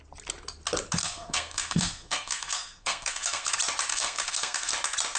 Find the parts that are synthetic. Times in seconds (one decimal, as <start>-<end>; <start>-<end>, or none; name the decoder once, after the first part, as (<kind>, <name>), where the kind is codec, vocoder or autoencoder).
1.0-3.5 (codec, SNAC); 3.9-4.7